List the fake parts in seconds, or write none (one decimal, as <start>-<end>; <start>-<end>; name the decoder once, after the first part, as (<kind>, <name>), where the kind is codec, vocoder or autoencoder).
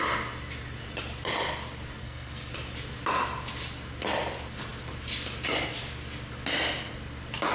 2.0-2.5 (codec, SNAC)